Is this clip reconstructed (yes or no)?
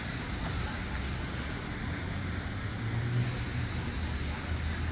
no